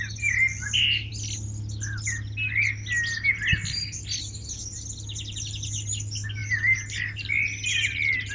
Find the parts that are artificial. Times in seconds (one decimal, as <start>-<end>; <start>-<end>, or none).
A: none